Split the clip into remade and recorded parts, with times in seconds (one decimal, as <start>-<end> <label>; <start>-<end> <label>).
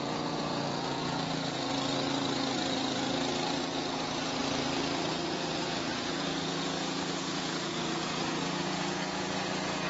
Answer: 0.0-1.7 remade; 1.7-3.6 recorded; 3.6-4.4 remade; 4.4-5.1 recorded; 5.1-9.9 remade